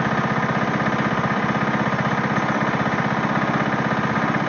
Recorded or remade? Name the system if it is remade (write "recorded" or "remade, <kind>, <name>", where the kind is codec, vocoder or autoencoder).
recorded